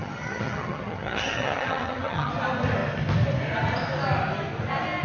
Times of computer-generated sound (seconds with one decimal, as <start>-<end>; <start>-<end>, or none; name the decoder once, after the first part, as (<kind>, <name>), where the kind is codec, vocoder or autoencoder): 0.0-2.3 (vocoder, HiFi-GAN)

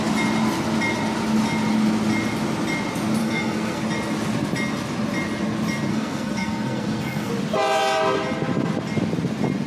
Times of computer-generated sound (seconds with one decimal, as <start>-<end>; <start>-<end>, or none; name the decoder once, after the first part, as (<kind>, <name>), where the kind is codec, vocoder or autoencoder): 3.2-3.8 (codec, SNAC); 5.9-7.3

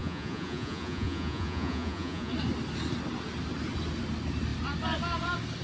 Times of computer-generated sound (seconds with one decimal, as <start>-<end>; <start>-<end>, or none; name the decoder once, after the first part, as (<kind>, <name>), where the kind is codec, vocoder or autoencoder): 0.0-2.3 (vocoder, Vocos)

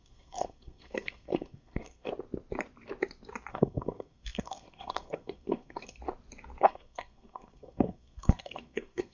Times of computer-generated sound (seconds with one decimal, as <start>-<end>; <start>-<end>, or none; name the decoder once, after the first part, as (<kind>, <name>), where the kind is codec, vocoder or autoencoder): 0.0-2.1 (codec, SNAC); 3.5-6.0; 6.6-9.1

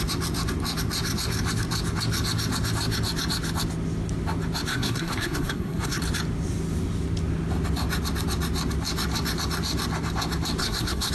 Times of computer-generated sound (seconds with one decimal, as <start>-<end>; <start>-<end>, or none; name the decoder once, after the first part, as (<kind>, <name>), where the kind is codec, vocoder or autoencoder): 4.7-6.0 (codec, SNAC); 10.6-11.1

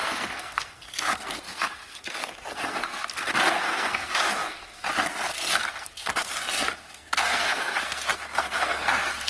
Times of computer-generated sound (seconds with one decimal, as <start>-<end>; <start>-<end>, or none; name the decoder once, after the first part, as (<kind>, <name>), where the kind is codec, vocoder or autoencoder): 0.0-9.3 (codec, SNAC)

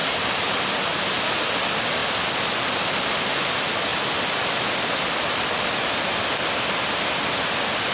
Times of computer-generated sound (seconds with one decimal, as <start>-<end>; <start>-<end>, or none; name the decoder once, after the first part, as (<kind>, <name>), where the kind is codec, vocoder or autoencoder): 3.9-5.9 (vocoder, BigVGAN v2)

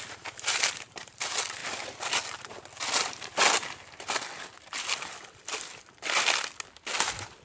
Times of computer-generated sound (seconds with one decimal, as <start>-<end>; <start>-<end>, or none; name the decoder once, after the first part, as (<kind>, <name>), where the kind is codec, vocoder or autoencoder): none